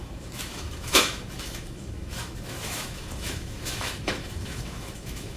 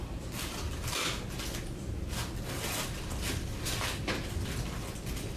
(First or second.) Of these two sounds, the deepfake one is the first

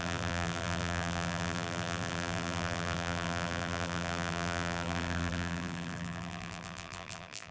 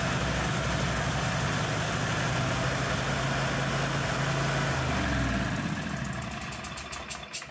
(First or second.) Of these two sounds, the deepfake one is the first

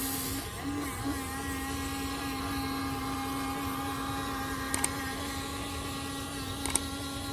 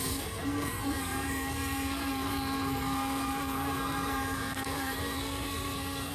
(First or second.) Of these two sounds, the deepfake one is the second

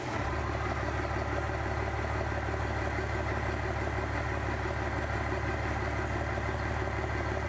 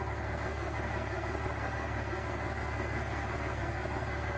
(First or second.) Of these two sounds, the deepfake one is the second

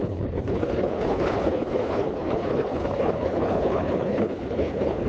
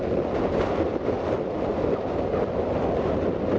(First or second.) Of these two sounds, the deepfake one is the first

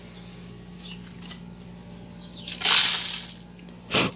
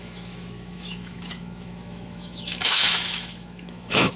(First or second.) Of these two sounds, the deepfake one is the second